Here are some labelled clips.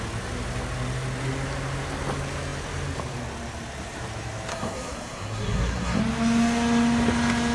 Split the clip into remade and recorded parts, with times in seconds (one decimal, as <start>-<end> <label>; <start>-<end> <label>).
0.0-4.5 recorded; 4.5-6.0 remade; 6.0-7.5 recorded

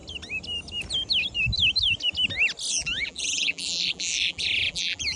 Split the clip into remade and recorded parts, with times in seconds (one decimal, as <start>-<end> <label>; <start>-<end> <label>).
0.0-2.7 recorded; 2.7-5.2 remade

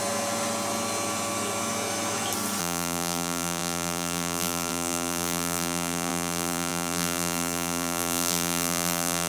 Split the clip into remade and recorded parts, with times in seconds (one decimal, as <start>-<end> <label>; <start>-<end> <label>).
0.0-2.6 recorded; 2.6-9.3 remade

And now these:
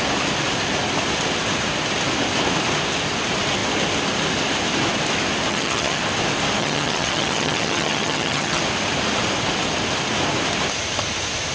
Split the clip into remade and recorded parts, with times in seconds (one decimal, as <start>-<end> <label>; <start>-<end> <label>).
0.0-5.5 recorded; 5.5-6.0 remade; 6.0-6.6 recorded; 6.6-8.6 remade; 8.6-11.5 recorded

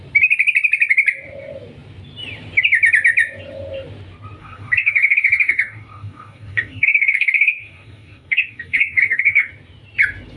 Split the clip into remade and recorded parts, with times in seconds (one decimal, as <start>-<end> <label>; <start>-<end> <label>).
0.0-4.4 recorded; 4.4-9.5 remade; 9.5-10.4 recorded